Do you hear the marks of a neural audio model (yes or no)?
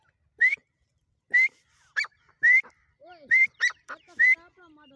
yes